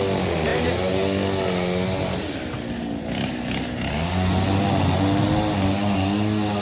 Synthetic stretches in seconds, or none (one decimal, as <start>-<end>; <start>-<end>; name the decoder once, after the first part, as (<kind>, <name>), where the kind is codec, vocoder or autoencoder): none

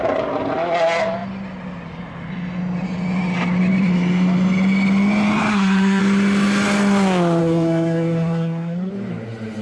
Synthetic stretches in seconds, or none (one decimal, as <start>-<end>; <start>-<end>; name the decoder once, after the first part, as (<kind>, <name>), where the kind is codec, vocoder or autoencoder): 5.5-6.0 (codec, SNAC); 7.4-8.9

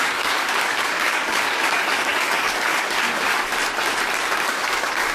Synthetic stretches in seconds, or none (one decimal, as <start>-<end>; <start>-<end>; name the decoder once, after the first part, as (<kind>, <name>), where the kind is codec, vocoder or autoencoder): 0.0-3.5 (codec, DAC); 4.4-5.1

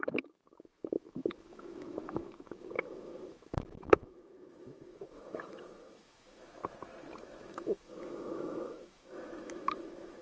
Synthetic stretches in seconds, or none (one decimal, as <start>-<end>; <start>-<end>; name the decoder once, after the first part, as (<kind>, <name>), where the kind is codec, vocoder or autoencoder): 0.0-6.6 (autoencoder, DAC-VAE); 7.2-10.2

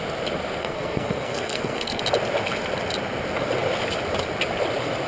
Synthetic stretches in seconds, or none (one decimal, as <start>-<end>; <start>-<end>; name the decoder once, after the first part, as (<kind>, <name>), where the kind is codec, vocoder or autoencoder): 0.6-2.0 (codec, SNAC)

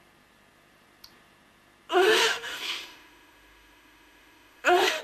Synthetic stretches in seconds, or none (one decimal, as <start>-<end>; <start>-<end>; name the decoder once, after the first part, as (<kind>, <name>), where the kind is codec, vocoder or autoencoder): 1.9-5.0 (autoencoder, DAC-VAE)